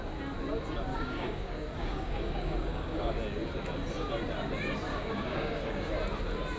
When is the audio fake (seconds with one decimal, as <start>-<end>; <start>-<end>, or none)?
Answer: 0.9-3.1; 4.9-5.9